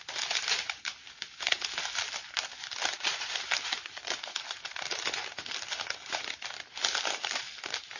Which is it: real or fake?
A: real